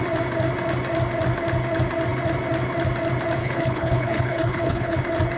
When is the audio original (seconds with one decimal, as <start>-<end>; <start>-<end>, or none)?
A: 0.0-3.4; 5.0-5.4